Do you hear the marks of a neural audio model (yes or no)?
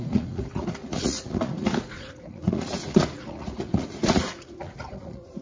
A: yes